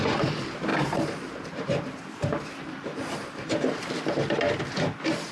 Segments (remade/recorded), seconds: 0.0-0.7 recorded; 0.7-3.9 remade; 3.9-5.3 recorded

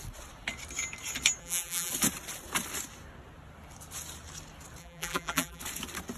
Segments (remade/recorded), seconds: 0.0-1.4 recorded; 1.4-1.9 remade; 1.9-4.8 recorded; 4.8-5.6 remade; 5.6-6.2 recorded

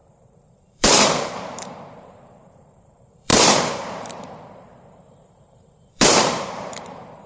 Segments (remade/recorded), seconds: 0.0-7.3 remade

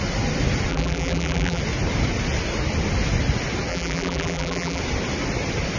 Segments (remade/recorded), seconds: 0.0-0.7 recorded; 0.7-1.6 remade; 1.6-3.7 recorded; 3.7-4.8 remade; 4.8-5.8 recorded

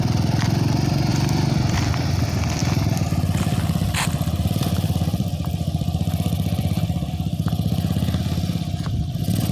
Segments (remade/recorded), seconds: 0.0-1.1 recorded; 1.1-1.9 remade; 1.9-2.6 recorded; 2.6-7.1 remade; 7.1-9.5 recorded

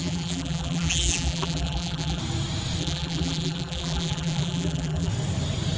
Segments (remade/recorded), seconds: 0.0-2.2 remade; 2.2-2.8 recorded; 2.8-5.1 remade; 5.1-5.8 recorded

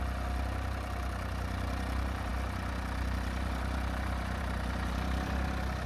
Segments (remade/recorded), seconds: 0.0-5.9 recorded

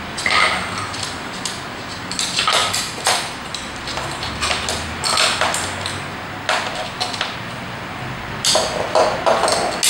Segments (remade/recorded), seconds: 0.0-2.6 recorded; 2.6-4.3 remade; 4.3-9.9 recorded